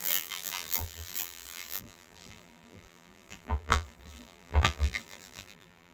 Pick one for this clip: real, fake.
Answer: fake